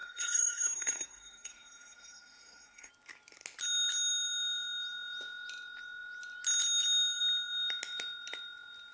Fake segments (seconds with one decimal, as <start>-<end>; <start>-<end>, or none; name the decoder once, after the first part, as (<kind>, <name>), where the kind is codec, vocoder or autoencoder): 0.0-2.9 (codec, SNAC)